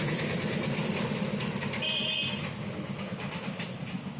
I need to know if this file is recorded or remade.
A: recorded